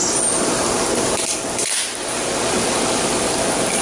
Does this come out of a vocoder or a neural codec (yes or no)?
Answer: no